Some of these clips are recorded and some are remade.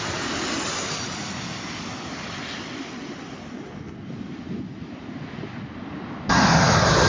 recorded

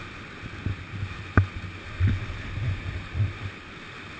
recorded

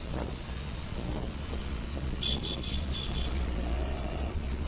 remade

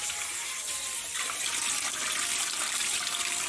recorded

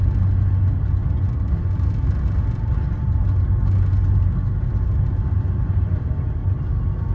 recorded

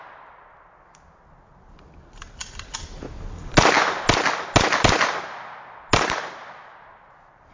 recorded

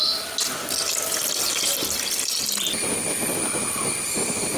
recorded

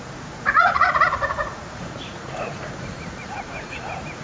remade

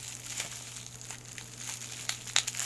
recorded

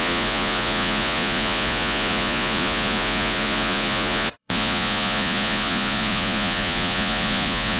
remade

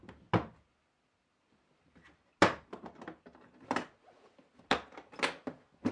recorded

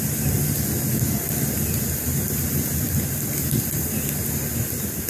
recorded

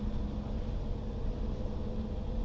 recorded